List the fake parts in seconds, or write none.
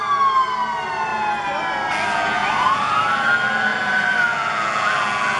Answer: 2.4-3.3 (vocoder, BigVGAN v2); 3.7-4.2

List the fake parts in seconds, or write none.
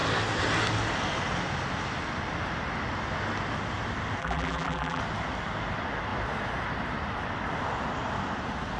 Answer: 4.2-5.0 (vocoder, BigVGAN v2)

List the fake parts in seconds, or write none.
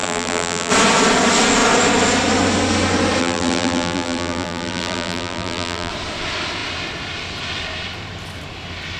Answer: 0.0-0.7 (vocoder, BigVGAN v2); 3.2-5.9